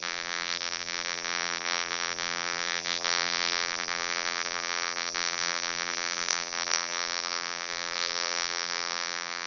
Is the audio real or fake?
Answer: fake